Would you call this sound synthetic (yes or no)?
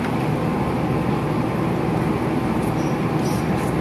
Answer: no